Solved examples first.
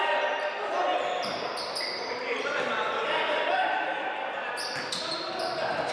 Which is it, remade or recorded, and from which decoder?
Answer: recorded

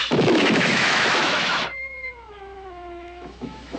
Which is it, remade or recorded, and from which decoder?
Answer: remade, autoencoder, DAC-VAE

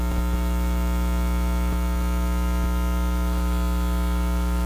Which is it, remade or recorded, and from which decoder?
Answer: remade, autoencoder, DAC-VAE